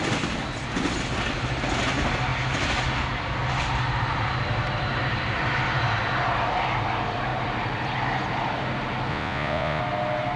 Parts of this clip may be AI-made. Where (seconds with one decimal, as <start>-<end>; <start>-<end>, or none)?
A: 9.1-9.8